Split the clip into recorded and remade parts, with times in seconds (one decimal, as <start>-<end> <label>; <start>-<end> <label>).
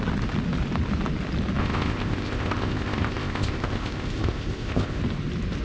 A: 0.0-1.6 recorded; 1.6-5.0 remade; 5.0-5.6 recorded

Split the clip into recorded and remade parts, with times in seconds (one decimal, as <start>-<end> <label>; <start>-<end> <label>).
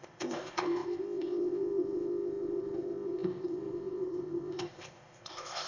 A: 0.0-5.7 remade